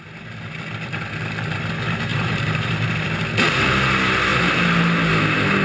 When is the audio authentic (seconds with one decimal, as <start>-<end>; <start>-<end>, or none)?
0.0-2.1; 2.9-4.3; 4.8-5.6